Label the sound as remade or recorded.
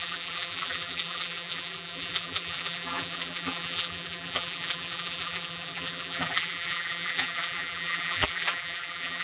remade